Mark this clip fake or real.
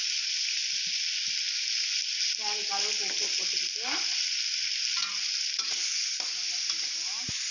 real